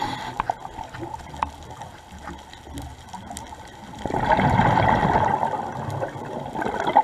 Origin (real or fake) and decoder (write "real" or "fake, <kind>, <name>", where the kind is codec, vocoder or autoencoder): real